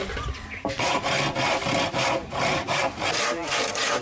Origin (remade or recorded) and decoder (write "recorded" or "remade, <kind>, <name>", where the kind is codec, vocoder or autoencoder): remade, vocoder, BigVGAN v2